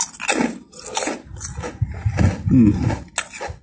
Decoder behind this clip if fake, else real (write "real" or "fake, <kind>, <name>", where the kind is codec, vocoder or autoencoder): real